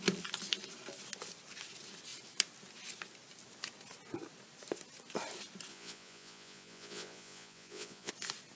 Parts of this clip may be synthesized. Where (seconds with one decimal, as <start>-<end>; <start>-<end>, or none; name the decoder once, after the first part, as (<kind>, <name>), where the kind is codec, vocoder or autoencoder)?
5.7-8.1 (vocoder, Vocos)